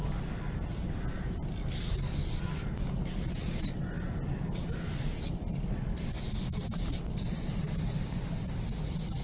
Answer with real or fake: real